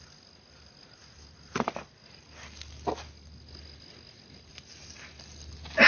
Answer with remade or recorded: recorded